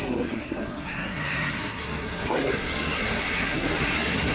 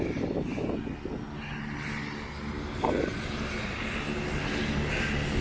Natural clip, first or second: second